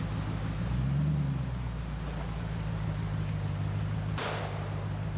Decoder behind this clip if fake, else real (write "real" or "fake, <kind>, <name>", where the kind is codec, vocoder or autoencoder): real